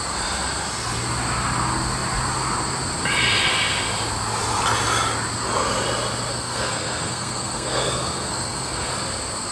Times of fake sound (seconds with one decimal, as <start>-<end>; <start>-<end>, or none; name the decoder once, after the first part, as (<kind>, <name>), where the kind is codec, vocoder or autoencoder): 6.3-8.9 (codec, SNAC)